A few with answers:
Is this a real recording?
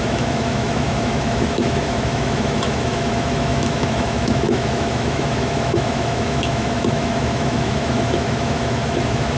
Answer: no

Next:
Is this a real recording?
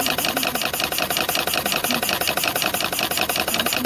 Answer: yes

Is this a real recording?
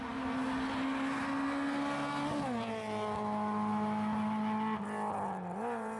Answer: yes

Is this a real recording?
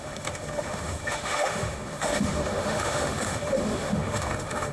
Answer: no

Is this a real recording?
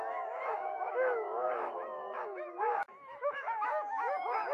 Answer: no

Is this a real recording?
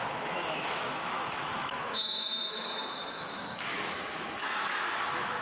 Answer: no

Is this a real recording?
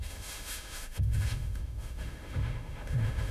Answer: no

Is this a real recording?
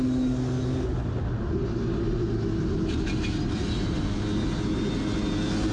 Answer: yes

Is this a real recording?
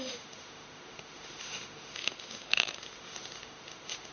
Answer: no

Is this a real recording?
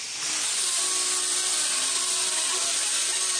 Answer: yes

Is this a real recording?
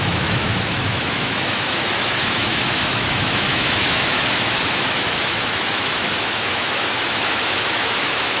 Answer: no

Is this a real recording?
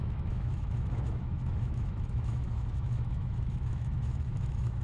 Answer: no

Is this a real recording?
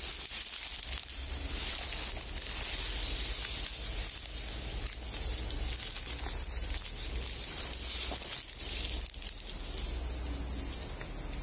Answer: yes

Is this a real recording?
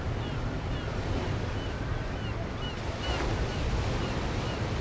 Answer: yes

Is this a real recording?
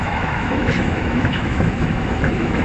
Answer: no